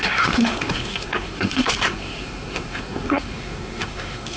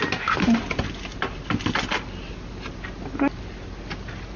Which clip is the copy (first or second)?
first